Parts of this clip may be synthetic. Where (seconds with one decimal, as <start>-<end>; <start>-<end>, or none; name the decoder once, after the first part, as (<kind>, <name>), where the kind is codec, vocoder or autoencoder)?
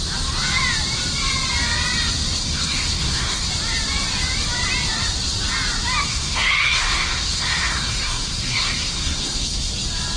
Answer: 2.4-3.5 (codec, SNAC); 6.1-9.7